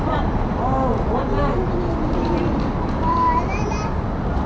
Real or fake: real